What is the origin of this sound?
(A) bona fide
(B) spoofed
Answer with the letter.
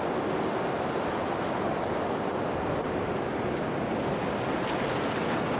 A